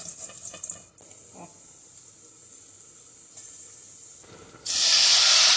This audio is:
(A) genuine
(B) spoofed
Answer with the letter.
A